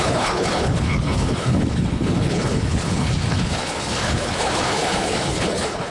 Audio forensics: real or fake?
fake